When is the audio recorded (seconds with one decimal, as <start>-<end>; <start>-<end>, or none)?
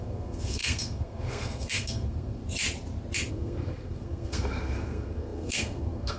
2.4-3.3